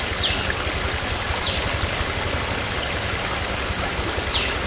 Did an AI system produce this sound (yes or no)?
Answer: no